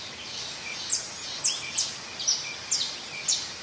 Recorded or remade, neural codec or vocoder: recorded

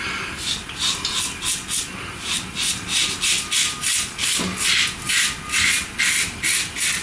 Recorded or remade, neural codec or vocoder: recorded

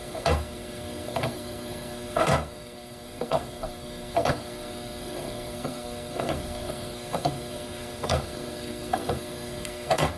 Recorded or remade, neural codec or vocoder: remade, codec, SNAC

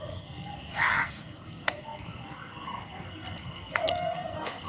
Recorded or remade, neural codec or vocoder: remade, codec, SNAC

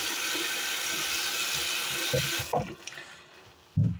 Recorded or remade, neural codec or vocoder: recorded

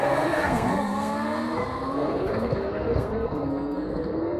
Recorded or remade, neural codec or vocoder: remade, codec, SNAC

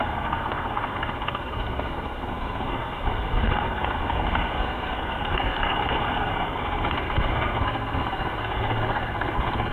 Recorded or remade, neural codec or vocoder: remade, codec, SNAC